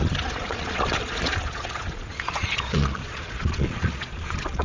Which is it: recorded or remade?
remade